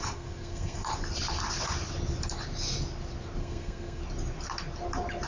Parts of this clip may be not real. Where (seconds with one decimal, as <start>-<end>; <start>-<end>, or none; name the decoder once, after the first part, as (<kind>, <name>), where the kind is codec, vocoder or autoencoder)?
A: 0.0-0.9 (codec, SNAC); 3.4-4.0